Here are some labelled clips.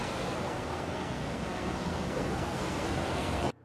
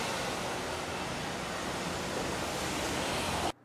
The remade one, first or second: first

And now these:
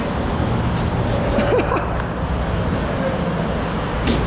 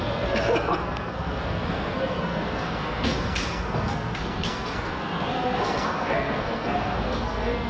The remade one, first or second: second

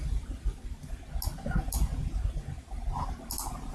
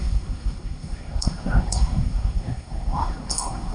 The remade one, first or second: second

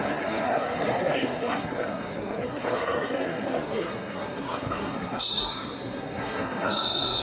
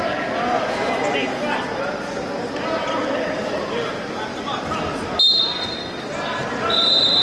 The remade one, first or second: first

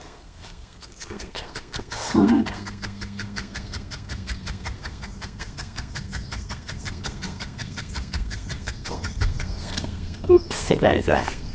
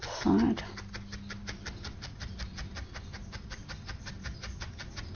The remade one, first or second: first